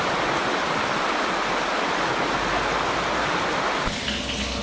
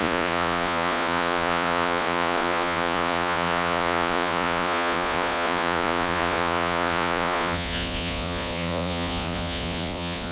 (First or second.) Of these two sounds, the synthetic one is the second